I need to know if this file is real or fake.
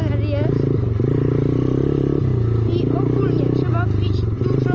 real